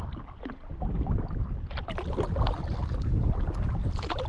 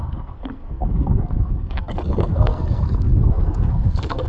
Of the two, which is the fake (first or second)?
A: second